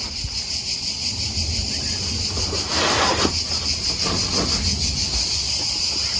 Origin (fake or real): real